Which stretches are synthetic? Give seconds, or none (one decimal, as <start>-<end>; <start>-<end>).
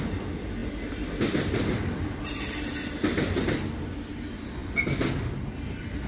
none